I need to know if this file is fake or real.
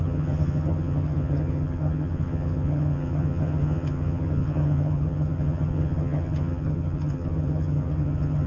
fake